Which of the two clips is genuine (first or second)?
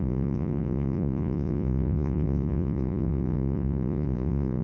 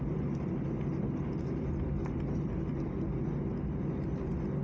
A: second